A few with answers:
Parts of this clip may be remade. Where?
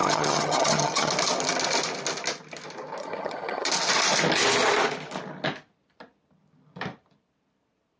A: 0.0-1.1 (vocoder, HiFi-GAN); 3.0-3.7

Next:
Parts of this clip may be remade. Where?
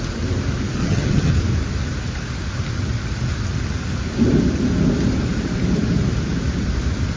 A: 0.8-1.3 (vocoder, HiFi-GAN)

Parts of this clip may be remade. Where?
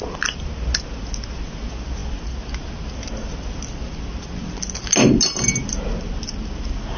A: none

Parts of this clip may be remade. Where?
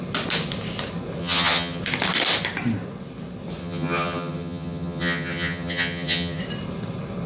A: 1.2-1.8 (vocoder, HiFi-GAN); 3.6-6.4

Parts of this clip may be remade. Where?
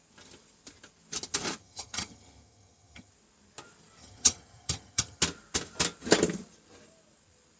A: 1.6-3.1 (vocoder, HiFi-GAN); 4.0-5.2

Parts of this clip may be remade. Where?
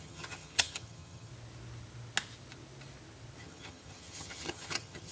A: 0.0-1.3 (vocoder, HiFi-GAN); 3.4-5.1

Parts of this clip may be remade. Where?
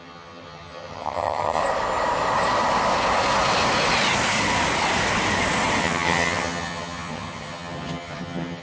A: 0.0-1.6 (vocoder, HiFi-GAN); 5.8-8.6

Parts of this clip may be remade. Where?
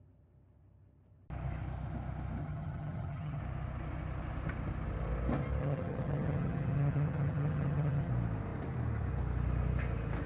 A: 2.4-3.4 (vocoder, HiFi-GAN); 5.6-8.1